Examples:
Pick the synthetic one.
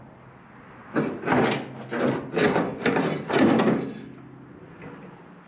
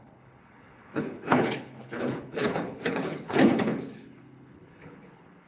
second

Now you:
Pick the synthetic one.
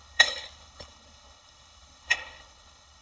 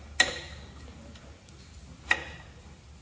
first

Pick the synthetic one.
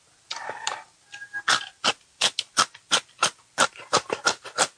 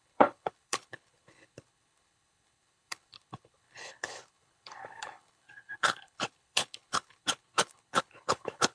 second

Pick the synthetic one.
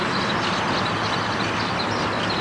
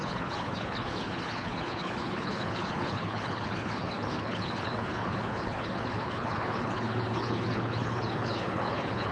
second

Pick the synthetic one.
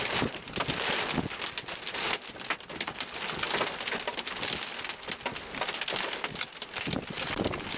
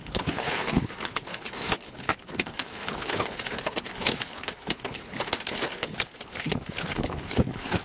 second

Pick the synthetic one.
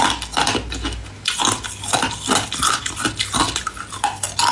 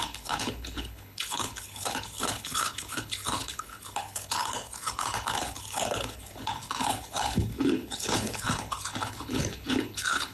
second